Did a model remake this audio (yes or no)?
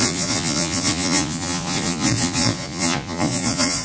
yes